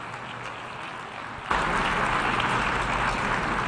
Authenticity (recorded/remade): recorded